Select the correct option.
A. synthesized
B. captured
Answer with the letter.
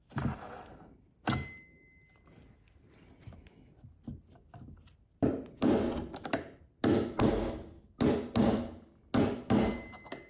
B